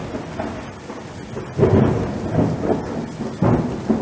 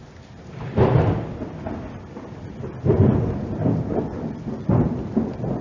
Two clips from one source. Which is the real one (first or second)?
first